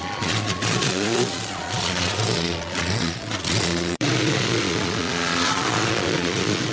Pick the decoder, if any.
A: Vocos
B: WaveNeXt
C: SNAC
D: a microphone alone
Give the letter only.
A